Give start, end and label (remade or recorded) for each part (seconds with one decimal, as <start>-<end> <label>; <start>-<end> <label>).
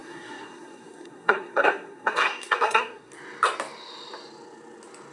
0.0-3.1 remade; 3.1-5.1 recorded